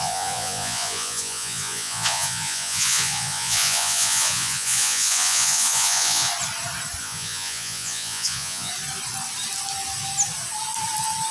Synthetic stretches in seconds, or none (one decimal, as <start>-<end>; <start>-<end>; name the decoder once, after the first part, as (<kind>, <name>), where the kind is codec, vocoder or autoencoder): 0.0-6.3 (vocoder, Vocos); 7.0-8.7